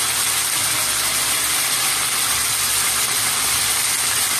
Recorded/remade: remade